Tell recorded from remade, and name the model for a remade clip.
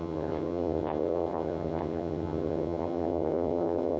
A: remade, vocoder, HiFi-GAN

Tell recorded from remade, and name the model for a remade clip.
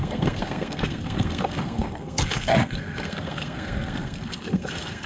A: remade, codec, SNAC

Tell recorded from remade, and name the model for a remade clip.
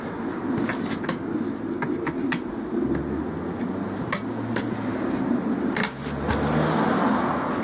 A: recorded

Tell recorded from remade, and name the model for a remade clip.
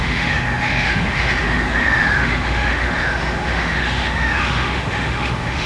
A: remade, autoencoder, DAC-VAE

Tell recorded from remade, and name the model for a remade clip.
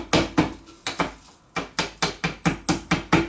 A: recorded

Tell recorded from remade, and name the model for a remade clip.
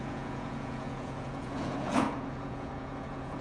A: remade, vocoder, Vocos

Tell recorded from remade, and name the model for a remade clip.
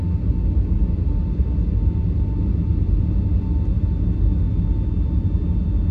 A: recorded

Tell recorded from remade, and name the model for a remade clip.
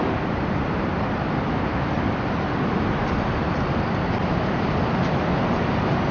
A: recorded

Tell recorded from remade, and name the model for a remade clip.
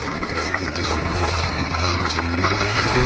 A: remade, codec, SNAC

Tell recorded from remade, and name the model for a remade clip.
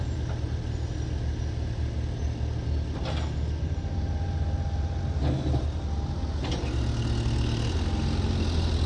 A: recorded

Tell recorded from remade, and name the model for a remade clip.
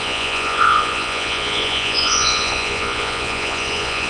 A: remade, vocoder, Vocos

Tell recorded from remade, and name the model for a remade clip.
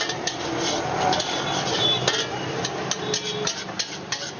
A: recorded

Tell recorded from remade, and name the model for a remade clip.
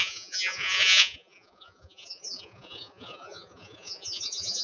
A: remade, vocoder, Vocos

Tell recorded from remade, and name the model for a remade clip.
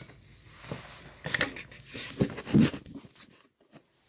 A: recorded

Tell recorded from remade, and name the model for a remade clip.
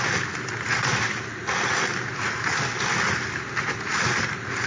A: recorded